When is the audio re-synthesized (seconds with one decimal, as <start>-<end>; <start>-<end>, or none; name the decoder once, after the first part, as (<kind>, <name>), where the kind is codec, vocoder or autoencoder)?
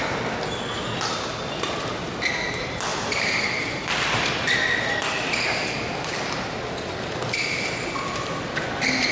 2.9-5.7 (vocoder, BigVGAN v2)